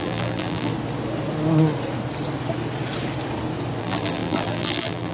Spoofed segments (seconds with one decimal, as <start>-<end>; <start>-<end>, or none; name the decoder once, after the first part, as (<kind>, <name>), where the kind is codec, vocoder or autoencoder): 0.0-0.7 (vocoder, BigVGAN v2); 3.8-5.1